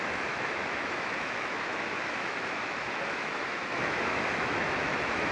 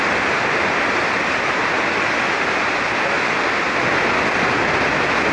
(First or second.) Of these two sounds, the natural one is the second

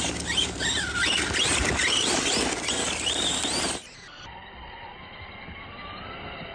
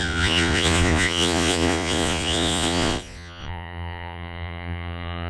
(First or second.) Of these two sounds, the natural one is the first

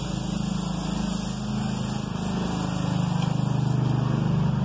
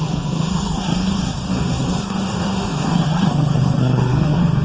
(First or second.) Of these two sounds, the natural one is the first